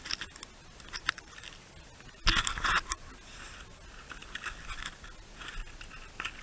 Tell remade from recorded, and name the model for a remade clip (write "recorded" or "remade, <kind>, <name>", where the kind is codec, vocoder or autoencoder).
recorded